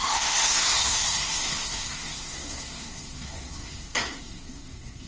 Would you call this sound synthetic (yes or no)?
yes